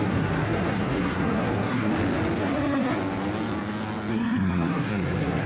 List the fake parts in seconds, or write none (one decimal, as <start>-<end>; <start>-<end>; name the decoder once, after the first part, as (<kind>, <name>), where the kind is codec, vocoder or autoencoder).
0.0-1.9 (codec, SNAC); 2.4-3.0; 4.1-5.5